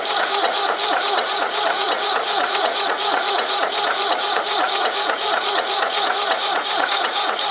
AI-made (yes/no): yes